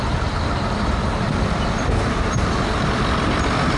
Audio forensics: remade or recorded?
recorded